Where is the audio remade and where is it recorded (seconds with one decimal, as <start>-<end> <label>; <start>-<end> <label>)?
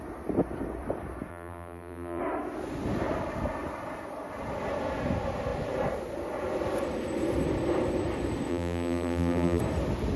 0.0-1.3 recorded; 1.3-2.2 remade; 2.2-8.5 recorded; 8.5-9.6 remade; 9.6-10.2 recorded